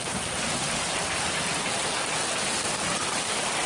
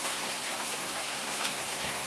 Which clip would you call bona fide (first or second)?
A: first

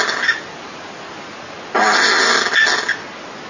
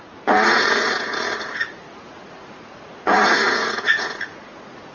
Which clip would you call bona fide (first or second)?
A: first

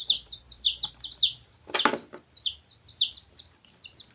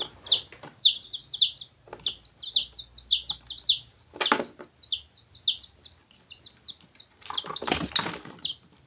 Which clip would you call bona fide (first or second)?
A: second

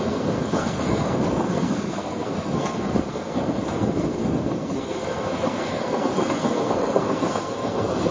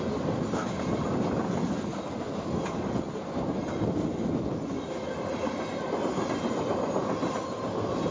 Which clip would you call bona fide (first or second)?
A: second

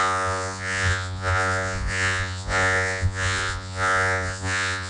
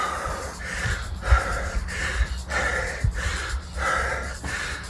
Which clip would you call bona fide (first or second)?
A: second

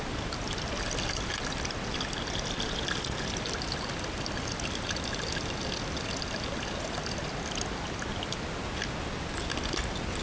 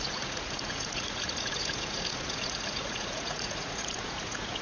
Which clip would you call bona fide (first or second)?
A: first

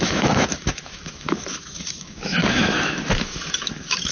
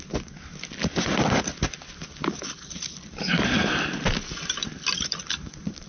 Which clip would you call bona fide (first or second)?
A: second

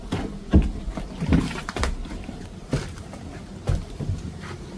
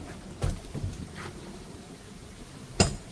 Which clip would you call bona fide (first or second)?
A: second